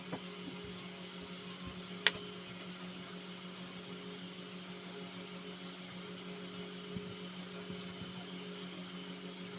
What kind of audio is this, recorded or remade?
recorded